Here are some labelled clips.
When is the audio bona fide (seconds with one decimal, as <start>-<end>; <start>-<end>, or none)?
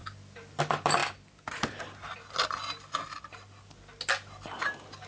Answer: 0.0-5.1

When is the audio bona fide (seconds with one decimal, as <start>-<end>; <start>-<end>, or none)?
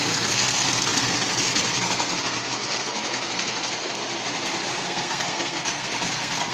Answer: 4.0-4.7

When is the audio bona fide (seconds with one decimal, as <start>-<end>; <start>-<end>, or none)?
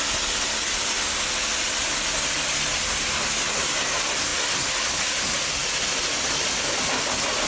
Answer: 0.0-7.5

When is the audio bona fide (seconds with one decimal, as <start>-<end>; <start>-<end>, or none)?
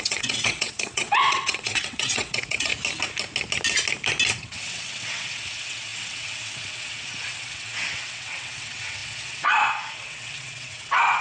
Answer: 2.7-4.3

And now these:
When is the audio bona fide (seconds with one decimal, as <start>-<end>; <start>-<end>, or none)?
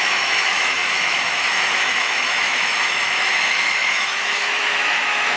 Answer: none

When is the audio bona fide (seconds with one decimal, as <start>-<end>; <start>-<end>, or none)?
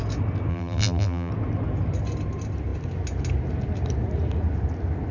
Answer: 0.0-0.5; 1.3-5.1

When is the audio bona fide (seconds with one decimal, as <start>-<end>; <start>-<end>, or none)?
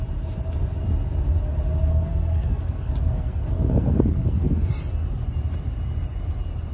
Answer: 0.0-1.9; 4.7-6.7